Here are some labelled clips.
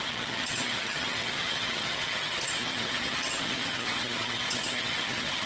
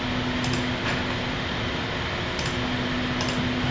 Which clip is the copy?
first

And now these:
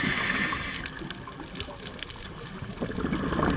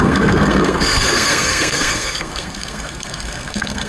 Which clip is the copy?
second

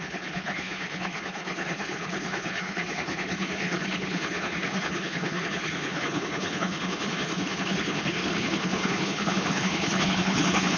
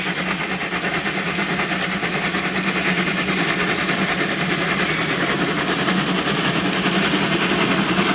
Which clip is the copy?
first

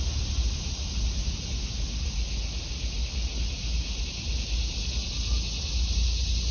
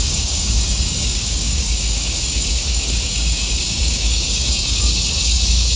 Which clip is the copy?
second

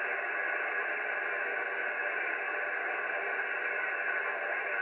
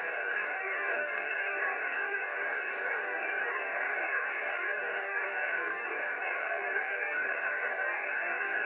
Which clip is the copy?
second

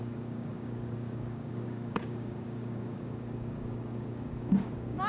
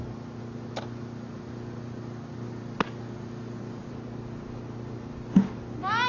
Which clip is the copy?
first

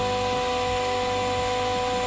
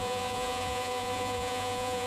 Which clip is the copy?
second